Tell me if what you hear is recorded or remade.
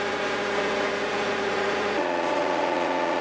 remade